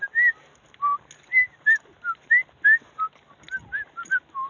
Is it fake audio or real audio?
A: real